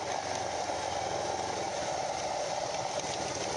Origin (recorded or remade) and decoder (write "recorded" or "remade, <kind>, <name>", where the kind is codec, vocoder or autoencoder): recorded